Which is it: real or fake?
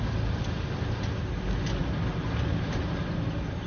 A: real